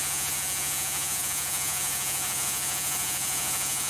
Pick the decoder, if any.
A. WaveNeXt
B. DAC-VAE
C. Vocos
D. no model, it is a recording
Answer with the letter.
C